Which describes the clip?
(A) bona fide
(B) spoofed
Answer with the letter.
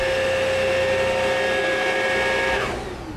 A